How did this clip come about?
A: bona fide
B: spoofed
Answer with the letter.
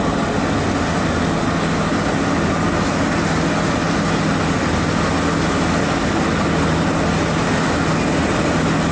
A